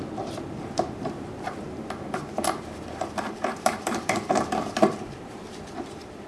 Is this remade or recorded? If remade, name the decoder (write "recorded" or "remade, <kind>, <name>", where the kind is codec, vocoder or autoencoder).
remade, vocoder, BigVGAN v2